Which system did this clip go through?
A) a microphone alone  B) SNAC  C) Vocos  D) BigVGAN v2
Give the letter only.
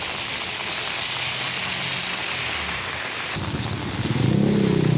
A